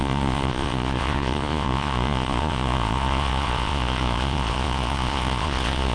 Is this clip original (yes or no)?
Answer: no